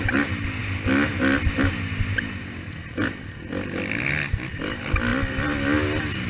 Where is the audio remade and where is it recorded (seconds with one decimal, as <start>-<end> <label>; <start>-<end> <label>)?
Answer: 0.0-6.3 recorded